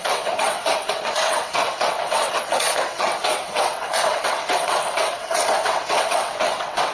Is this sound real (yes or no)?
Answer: no